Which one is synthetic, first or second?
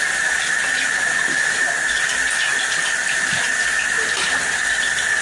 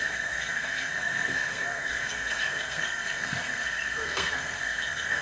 second